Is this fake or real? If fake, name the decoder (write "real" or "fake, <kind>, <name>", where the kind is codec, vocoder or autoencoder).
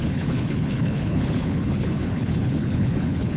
fake, codec, HILCodec